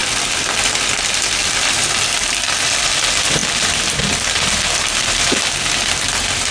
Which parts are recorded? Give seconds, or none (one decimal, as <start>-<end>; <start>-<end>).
none